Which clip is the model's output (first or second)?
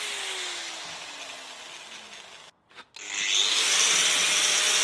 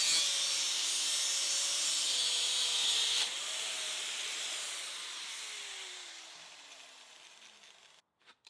second